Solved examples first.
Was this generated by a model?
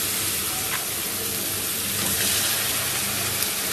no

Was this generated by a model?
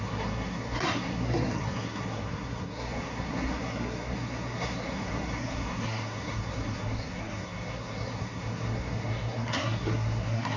yes